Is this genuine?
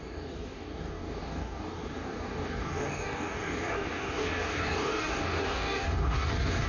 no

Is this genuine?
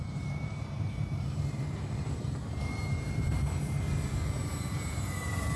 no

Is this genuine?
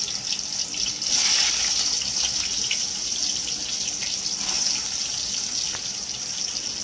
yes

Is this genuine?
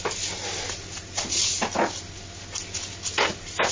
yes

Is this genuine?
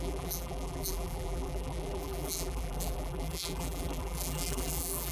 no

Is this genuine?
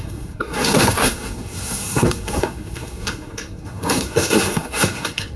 no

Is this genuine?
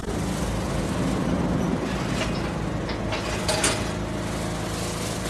yes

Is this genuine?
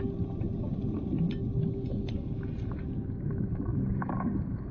yes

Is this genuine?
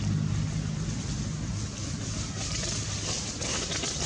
yes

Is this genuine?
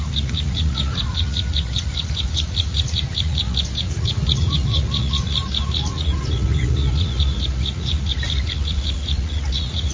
no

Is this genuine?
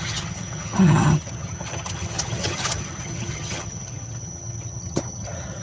no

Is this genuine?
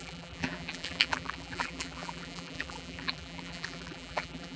no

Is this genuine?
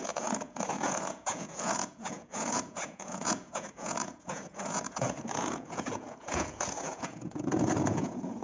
no